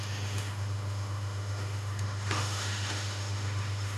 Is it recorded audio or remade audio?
remade